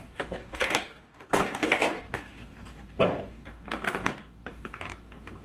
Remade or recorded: remade